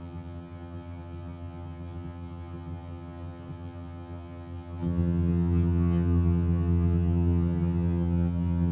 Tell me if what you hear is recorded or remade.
remade